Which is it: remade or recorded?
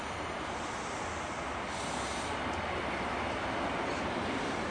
recorded